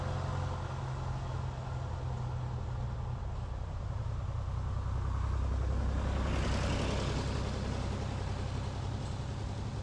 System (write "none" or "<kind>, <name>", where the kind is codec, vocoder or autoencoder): none